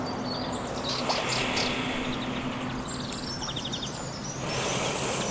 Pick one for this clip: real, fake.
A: real